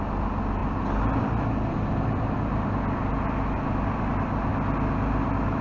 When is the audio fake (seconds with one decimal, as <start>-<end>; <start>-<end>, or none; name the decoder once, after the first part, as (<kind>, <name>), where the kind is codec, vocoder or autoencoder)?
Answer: none